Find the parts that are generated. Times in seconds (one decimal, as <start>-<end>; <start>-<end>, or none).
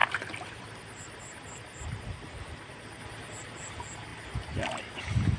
0.0-3.0; 4.1-5.0